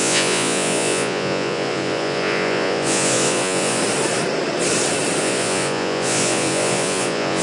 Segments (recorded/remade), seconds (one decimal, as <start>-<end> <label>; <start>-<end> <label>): 0.0-3.8 remade; 3.8-5.2 recorded; 5.2-7.4 remade

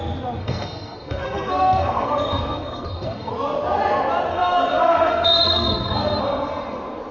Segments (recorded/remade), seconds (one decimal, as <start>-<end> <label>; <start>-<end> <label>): 0.0-0.4 recorded; 0.4-3.3 remade; 3.3-4.3 recorded; 4.3-6.2 remade; 6.2-7.1 recorded